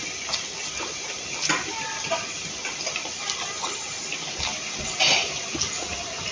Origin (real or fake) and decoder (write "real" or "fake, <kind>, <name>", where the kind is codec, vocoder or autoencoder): real